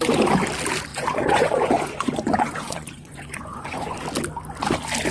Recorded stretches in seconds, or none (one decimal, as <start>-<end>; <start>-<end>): 0.0-0.9; 4.0-5.1